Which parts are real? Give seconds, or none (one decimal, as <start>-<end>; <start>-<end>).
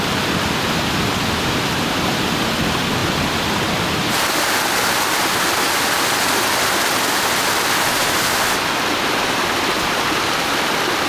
0.0-11.1